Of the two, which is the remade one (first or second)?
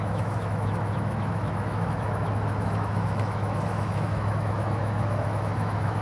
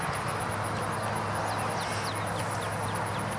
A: first